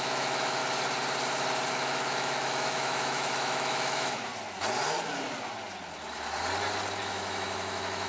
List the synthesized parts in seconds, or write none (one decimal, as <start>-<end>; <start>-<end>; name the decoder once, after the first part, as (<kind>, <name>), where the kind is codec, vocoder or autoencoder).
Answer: 0.0-0.6 (autoencoder, DAC-VAE); 1.7-4.3; 7.0-8.1